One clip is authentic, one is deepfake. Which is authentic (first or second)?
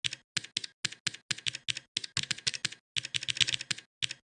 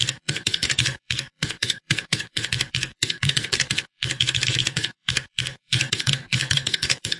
first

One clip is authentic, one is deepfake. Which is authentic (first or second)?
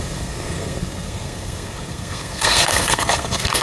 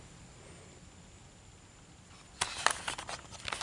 second